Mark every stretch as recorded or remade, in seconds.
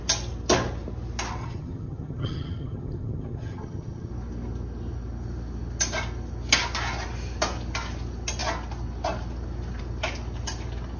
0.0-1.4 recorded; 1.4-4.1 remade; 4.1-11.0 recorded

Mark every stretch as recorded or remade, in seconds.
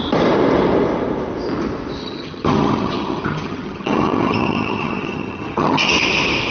0.0-2.0 recorded; 2.0-5.9 remade; 5.9-6.5 recorded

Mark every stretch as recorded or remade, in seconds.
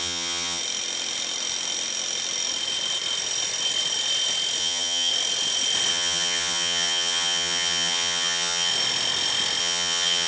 0.0-0.6 remade; 0.6-4.6 recorded; 4.6-5.1 remade; 5.1-5.9 recorded; 5.9-8.7 remade; 8.7-9.6 recorded; 9.6-10.3 remade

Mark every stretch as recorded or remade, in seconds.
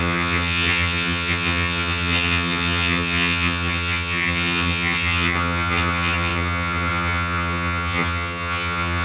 0.0-9.0 remade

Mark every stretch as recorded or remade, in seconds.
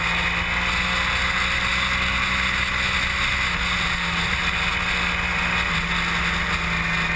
0.0-7.2 recorded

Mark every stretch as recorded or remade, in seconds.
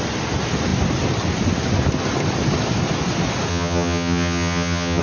0.0-3.5 recorded; 3.5-5.0 remade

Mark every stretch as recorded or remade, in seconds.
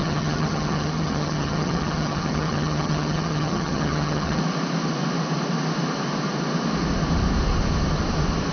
0.0-4.4 remade; 4.4-8.5 recorded